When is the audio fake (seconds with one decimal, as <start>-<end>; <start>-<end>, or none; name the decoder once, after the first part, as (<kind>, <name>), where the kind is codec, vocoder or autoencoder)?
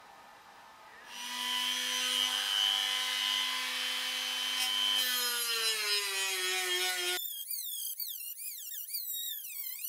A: none